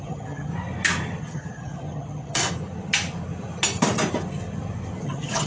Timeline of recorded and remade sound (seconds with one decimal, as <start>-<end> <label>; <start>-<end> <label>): 0.0-0.5 remade; 0.5-1.2 recorded; 1.2-2.4 remade; 2.4-5.0 recorded; 5.0-5.5 remade